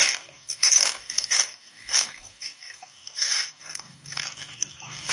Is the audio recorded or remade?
remade